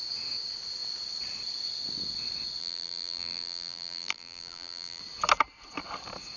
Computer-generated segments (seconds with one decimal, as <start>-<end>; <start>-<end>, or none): 2.6-5.0